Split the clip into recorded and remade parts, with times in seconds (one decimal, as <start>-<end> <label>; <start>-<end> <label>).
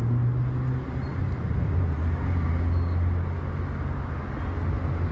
0.0-5.1 recorded